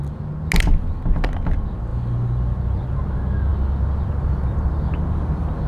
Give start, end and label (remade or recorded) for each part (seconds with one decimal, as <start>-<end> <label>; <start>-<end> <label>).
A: 0.0-5.7 recorded